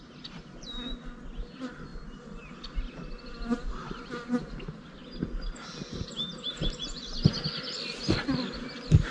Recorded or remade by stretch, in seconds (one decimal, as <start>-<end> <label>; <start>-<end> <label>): 0.0-9.1 recorded